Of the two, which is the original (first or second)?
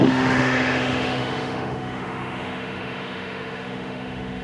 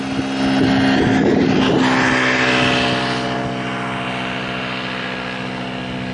second